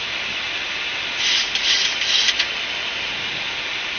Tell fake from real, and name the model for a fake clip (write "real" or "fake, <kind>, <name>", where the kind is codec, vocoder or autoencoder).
real